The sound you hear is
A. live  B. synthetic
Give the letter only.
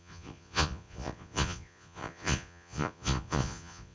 B